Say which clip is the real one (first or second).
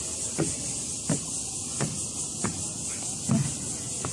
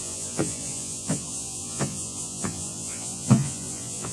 first